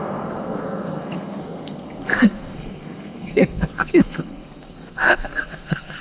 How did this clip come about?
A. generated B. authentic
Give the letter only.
A